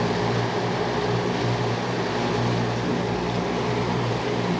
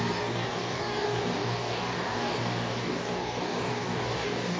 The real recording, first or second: first